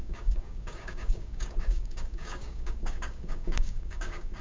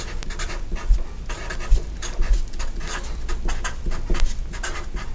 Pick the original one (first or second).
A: second